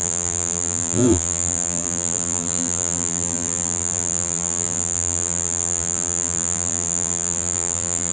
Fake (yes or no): yes